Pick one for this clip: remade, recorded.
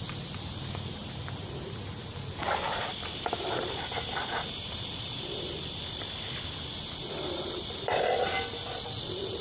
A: recorded